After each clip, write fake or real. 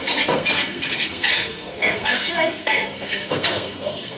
fake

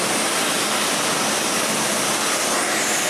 real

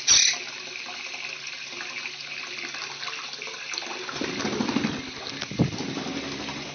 real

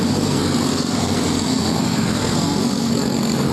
fake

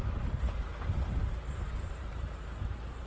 fake